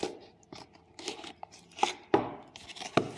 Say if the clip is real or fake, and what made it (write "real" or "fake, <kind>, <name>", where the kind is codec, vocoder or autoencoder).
real